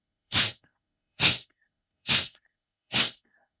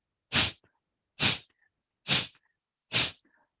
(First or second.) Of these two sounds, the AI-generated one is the first